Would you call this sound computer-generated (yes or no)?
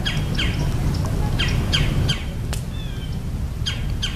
no